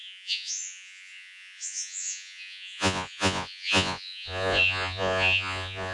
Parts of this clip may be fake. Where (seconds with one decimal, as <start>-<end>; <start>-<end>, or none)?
0.0-5.9

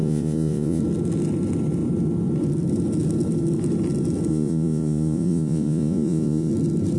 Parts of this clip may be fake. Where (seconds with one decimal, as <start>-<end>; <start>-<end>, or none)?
0.0-0.8; 4.3-6.5

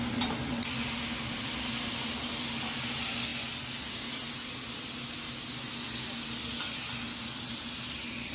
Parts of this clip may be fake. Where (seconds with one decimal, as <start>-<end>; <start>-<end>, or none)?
none

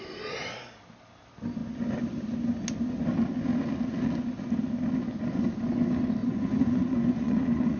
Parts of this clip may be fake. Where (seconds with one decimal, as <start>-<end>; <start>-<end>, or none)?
6.2-7.8

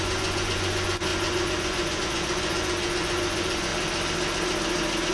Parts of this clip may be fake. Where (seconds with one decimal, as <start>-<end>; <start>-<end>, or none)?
0.0-3.7

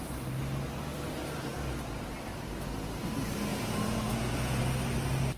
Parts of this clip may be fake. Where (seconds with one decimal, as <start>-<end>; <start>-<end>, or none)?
3.5-4.6